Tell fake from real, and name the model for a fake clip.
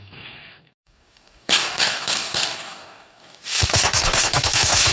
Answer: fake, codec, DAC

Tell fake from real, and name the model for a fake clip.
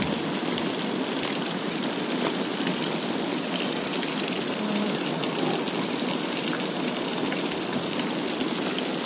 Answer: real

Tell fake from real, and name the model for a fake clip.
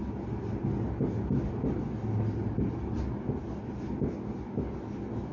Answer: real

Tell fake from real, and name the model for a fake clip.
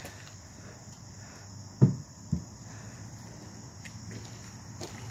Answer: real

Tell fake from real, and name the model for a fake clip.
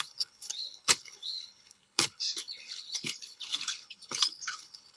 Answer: fake, codec, HILCodec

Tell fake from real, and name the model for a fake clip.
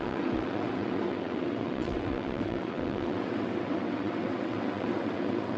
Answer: fake, vocoder, WaveNeXt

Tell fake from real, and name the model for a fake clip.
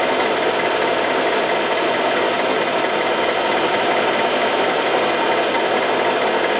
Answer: real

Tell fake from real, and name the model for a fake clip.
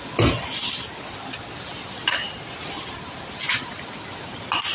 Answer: real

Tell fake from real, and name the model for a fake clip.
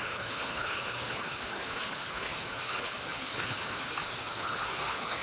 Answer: fake, codec, HILCodec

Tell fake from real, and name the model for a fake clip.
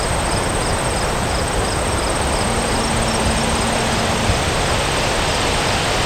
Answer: real